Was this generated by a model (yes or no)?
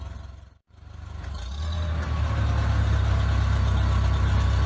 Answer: no